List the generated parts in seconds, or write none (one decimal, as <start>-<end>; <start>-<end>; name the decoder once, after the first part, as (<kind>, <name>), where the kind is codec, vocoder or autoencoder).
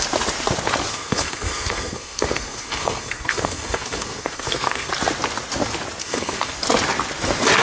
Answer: 0.9-4.9 (codec, SNAC); 6.0-6.5